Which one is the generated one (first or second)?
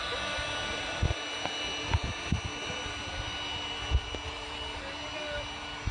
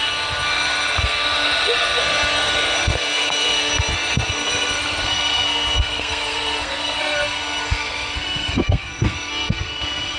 second